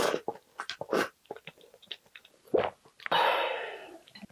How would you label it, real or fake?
real